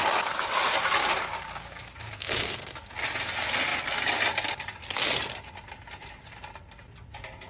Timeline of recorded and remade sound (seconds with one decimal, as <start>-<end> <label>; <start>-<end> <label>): 0.0-1.0 recorded; 1.0-2.6 remade; 2.6-7.5 recorded